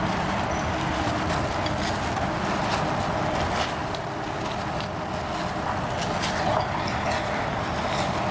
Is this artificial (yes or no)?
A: no